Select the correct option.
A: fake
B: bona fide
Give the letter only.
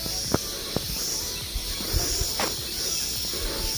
B